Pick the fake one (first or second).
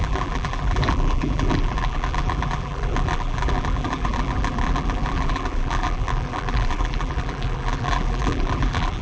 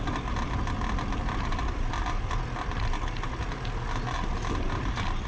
first